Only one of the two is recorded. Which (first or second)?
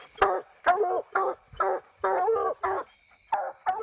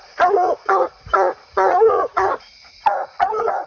first